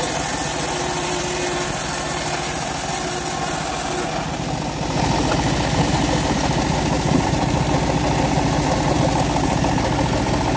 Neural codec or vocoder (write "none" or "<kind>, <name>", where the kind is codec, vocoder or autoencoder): none